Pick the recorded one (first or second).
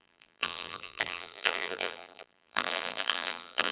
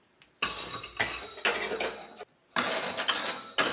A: second